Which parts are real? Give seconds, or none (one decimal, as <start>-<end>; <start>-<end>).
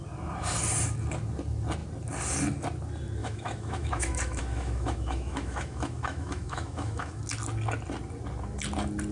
0.0-3.2; 7.2-9.1